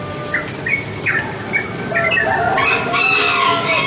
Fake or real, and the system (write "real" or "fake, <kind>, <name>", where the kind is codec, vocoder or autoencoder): real